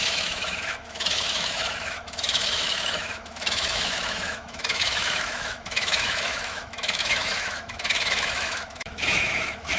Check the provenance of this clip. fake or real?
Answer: fake